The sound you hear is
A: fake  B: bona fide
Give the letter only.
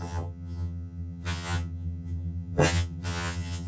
A